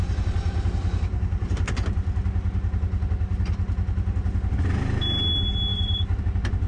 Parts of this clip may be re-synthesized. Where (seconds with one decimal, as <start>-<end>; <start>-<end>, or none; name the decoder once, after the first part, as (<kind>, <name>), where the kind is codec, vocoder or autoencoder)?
1.1-1.7 (vocoder, BigVGAN v2); 5.7-6.2

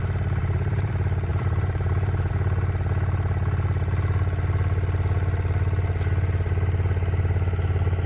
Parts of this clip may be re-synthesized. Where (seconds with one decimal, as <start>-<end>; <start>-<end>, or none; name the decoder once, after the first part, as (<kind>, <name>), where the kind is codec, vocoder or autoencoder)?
0.4-0.9 (vocoder, BigVGAN v2); 1.3-2.3

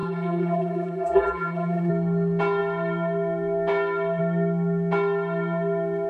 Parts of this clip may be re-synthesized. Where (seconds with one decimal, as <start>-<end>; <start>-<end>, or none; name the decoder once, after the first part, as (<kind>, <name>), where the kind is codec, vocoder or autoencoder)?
0.0-1.9 (vocoder, BigVGAN v2)

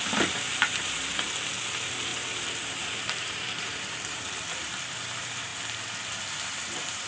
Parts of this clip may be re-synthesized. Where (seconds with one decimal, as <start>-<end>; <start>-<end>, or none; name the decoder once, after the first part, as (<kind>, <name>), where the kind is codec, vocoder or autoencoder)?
0.0-5.5 (vocoder, BigVGAN v2); 6.3-7.1